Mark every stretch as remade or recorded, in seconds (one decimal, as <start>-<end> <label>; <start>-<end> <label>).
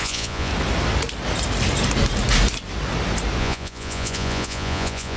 0.0-0.5 remade; 0.5-3.4 recorded; 3.4-5.2 remade